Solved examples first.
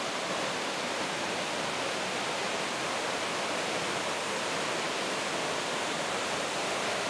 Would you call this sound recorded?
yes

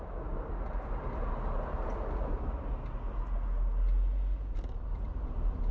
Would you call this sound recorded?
yes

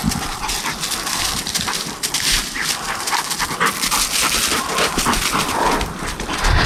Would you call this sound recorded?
yes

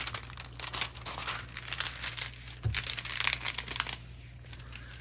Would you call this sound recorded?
yes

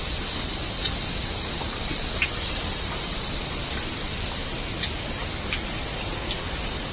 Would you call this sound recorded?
yes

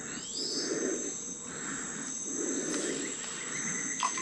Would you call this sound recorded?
yes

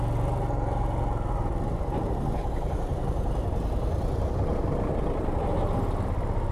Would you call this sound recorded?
yes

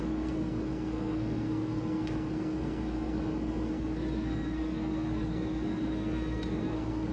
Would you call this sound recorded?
no